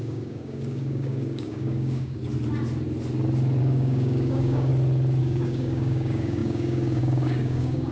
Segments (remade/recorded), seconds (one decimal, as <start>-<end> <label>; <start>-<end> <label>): 0.0-2.2 remade; 2.2-3.6 recorded; 3.6-4.7 remade; 4.7-5.2 recorded; 5.2-7.9 remade